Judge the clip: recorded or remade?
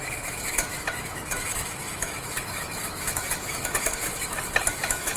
remade